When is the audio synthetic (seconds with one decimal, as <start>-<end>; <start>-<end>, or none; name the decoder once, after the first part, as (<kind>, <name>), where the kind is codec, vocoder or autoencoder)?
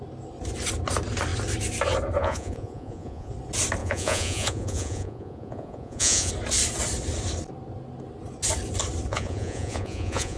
2.2-3.3 (vocoder, Vocos); 3.8-6.3; 9.1-10.4